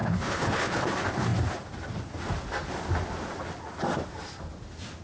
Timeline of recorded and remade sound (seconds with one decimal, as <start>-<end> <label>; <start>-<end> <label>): 0.0-0.9 remade; 0.9-5.0 recorded